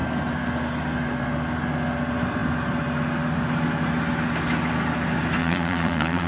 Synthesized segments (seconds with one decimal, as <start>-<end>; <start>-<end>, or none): 5.4-6.3